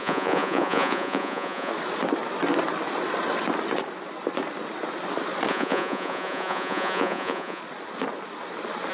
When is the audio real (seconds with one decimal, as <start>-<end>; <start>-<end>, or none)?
1.7-5.5; 7.6-8.9